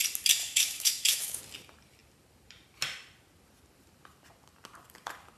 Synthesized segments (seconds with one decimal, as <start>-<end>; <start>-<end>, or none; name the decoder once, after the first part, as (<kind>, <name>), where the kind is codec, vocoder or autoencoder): 0.4-1.4 (autoencoder, DAC-VAE)